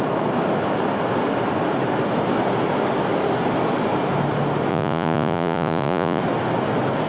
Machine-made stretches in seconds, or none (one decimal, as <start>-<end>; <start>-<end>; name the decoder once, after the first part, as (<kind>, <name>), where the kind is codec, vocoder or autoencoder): 4.7-6.2 (vocoder, Vocos)